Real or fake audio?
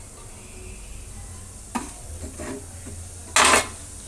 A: real